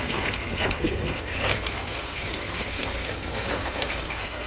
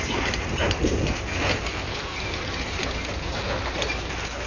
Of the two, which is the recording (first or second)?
second